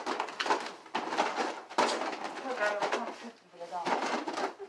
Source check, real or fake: real